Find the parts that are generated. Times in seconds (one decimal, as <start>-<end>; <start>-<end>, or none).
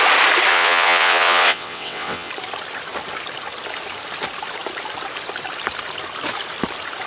0.5-2.3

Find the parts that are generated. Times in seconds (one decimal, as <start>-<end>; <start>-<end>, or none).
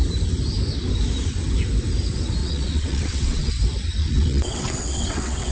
2.4-3.5; 4.0-5.5